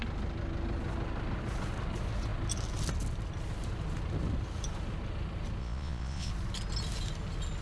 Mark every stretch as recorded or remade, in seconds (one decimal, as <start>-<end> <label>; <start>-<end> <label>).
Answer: 0.0-5.6 recorded; 5.6-6.3 remade; 6.3-7.6 recorded

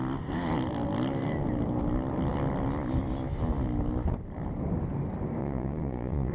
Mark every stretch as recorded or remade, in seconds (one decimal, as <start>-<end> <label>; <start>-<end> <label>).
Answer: 0.0-5.4 recorded; 5.4-6.3 remade

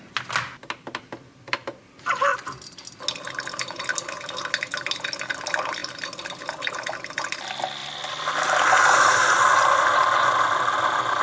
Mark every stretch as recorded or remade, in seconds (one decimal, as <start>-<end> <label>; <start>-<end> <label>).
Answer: 0.0-11.2 recorded

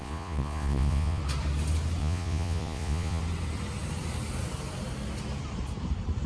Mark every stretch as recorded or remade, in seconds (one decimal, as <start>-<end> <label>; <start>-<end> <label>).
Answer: 0.0-1.2 remade; 1.2-2.0 recorded; 2.0-3.2 remade; 3.2-6.3 recorded

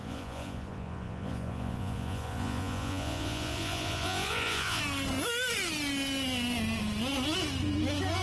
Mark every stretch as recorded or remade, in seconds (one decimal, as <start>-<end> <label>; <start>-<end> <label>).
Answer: 0.0-4.8 remade; 4.8-8.2 recorded

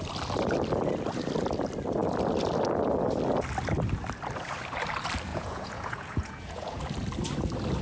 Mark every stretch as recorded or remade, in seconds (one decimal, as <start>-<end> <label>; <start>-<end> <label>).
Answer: 0.0-5.3 recorded; 5.3-6.8 remade; 6.8-7.8 recorded